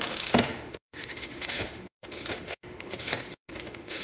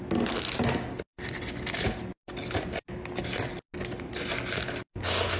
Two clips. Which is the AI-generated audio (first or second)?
first